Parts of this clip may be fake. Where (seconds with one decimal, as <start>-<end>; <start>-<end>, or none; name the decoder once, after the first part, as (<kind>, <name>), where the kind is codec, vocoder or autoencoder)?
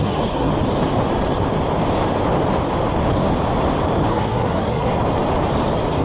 0.0-0.5 (codec, SNAC); 4.1-4.9